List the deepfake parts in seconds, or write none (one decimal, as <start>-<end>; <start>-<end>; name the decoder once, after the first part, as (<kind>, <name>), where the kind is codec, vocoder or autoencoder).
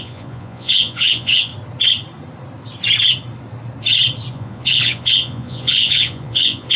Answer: 0.0-1.5 (vocoder, Vocos); 4.3-6.8